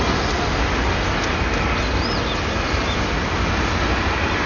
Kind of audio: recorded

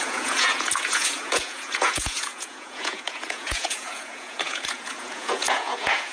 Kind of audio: remade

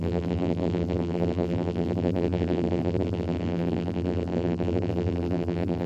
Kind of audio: remade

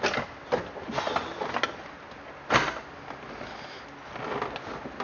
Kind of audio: recorded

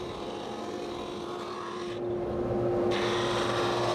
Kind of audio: recorded